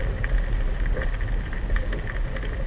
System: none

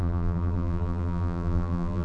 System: vocoder, BigVGAN v2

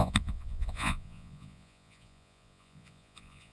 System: vocoder, Vocos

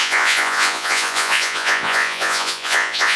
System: vocoder, Vocos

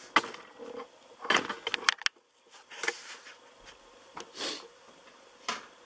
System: none